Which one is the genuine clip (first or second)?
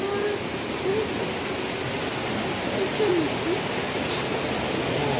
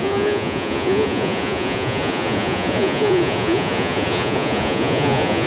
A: first